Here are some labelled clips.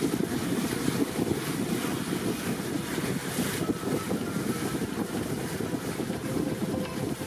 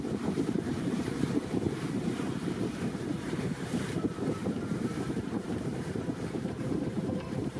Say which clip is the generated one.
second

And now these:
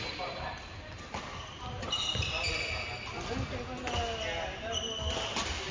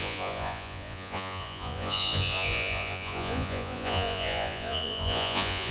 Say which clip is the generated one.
second